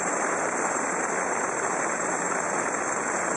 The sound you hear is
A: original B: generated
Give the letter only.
B